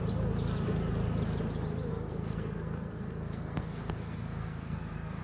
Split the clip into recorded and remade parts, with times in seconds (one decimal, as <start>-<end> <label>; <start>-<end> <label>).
0.0-1.9 recorded; 1.9-5.2 remade